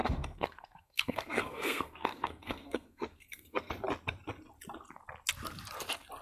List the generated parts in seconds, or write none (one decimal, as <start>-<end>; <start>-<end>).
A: 0.0-3.7